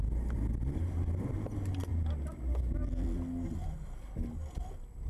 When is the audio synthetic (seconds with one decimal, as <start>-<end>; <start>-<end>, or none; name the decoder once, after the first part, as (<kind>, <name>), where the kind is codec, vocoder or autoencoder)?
none